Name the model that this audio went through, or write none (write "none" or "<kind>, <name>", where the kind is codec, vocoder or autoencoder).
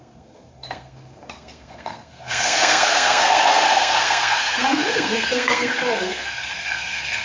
codec, SNAC